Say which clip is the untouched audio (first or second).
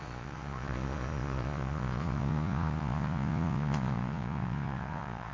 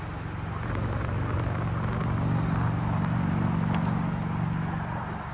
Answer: second